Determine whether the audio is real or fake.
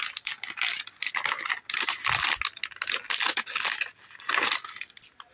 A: real